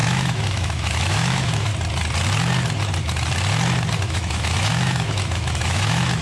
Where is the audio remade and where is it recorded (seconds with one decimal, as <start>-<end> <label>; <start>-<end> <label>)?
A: 0.0-1.7 remade; 1.7-4.0 recorded; 4.0-6.2 remade